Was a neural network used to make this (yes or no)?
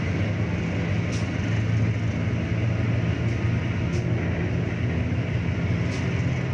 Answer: no